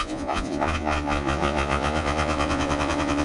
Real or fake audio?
fake